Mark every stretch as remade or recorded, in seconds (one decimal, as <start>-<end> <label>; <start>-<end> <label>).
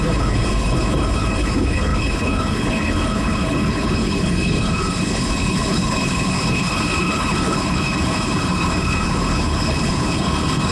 0.0-10.7 remade